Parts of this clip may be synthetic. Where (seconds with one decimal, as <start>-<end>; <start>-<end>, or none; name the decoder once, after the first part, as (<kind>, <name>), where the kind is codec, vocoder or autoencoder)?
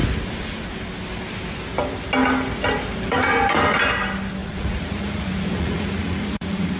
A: 4.4-6.8 (vocoder, Vocos)